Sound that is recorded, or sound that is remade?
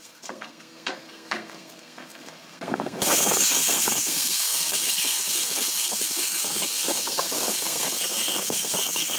remade